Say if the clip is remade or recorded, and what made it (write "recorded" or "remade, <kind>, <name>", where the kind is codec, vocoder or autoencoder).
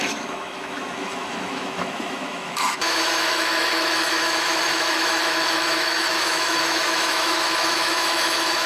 remade, autoencoder, DAC-VAE